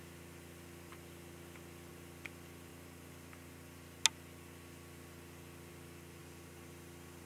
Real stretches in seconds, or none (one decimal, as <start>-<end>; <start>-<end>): 0.0-6.2